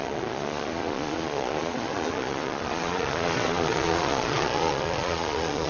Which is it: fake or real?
fake